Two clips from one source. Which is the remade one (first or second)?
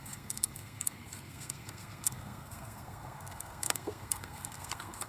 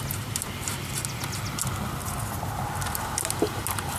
first